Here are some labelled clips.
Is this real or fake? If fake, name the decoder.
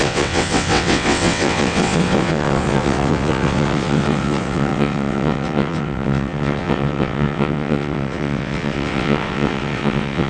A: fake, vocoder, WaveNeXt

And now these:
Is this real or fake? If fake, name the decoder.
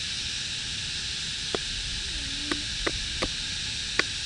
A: real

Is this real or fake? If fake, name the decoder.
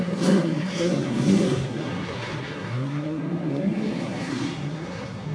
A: fake, codec, SNAC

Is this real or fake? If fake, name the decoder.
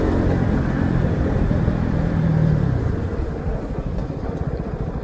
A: fake, vocoder, BigVGAN v2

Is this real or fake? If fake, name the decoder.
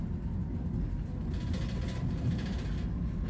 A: real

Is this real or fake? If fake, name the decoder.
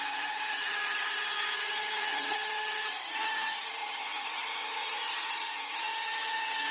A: fake, vocoder, HiFi-GAN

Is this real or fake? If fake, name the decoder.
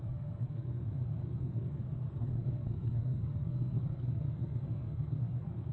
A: fake, codec, SNAC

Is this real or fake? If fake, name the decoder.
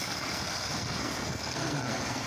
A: fake, codec, SNAC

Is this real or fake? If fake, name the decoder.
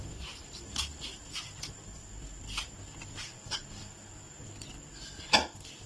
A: real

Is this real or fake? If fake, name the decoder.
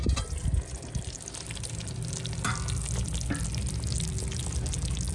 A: real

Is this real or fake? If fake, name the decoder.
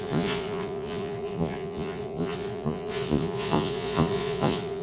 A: fake, vocoder, Vocos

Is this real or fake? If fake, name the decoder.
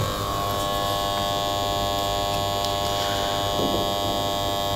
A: real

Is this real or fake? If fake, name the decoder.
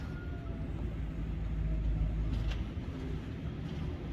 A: real